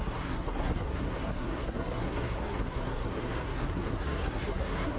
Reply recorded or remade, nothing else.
remade